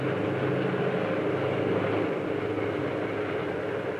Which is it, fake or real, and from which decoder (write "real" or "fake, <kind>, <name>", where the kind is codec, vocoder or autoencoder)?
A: real